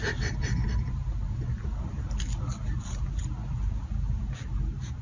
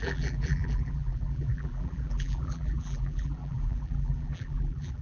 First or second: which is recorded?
first